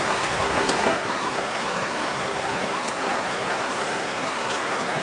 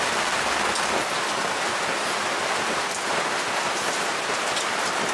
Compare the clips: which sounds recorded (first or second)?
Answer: second